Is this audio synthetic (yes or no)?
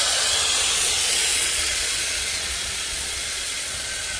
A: yes